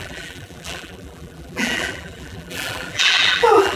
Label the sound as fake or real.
fake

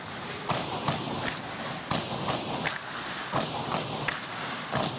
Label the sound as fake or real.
real